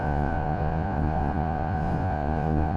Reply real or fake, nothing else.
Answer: fake